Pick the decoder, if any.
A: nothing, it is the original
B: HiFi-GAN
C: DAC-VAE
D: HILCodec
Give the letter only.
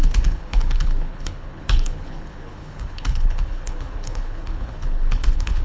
D